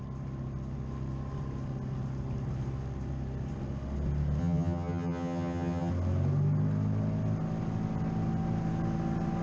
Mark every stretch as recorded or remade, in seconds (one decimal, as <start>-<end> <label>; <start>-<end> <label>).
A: 0.0-4.4 recorded; 4.4-5.9 remade; 5.9-9.4 recorded